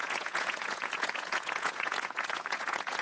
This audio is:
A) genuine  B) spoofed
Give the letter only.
B